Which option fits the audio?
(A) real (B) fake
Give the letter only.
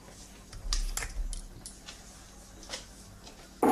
A